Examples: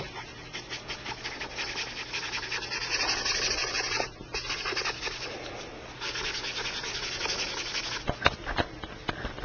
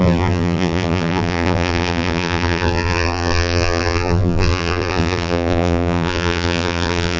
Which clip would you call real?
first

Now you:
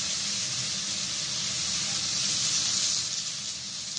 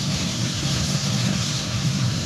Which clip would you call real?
first